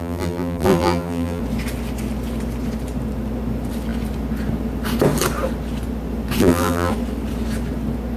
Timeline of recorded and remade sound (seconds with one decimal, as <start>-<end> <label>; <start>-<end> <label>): 0.0-1.4 remade; 1.4-6.4 recorded; 6.4-6.9 remade; 6.9-8.2 recorded